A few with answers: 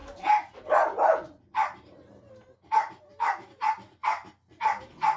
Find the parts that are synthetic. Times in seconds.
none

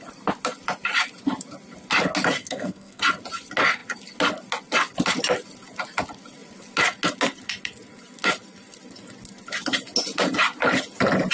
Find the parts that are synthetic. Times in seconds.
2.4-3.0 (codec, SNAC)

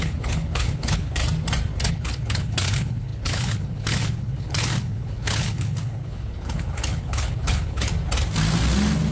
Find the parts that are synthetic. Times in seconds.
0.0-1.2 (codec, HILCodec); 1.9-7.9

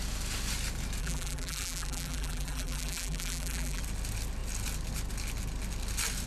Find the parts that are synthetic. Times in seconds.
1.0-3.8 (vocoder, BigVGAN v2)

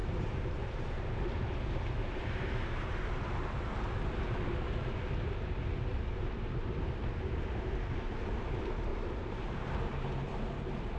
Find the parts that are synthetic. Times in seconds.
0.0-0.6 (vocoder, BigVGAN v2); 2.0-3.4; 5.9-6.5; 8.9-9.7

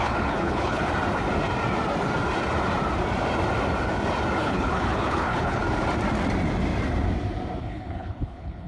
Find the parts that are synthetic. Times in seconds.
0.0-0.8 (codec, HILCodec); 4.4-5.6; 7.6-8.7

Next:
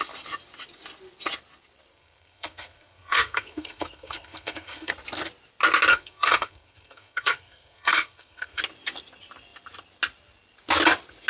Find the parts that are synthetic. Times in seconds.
1.9-4.9 (codec, SNAC); 5.9-8.6